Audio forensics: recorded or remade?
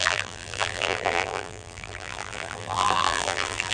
remade